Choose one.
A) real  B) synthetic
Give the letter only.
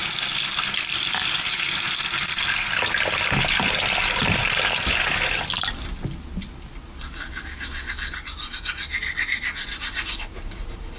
A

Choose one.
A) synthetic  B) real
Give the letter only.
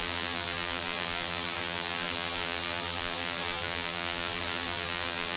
A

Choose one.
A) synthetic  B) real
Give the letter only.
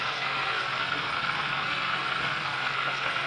A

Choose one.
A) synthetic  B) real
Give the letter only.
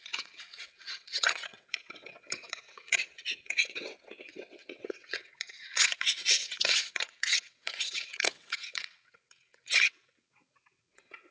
A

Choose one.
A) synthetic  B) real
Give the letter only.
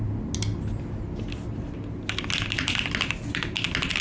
B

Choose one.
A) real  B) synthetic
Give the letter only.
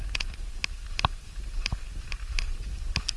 A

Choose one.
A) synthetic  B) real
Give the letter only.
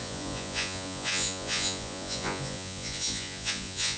A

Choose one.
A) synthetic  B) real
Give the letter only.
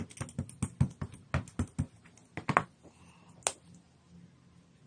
B